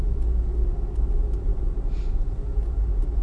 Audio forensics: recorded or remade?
recorded